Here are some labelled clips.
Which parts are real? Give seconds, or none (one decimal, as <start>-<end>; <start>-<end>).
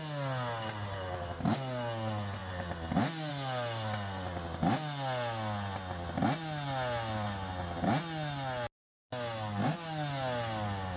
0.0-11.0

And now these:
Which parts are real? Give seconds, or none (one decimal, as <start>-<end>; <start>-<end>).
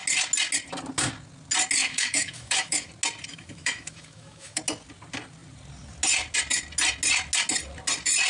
0.0-1.8; 2.9-3.3; 4.6-8.3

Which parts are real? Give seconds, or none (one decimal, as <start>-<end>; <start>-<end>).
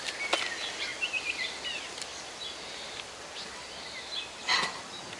0.0-5.2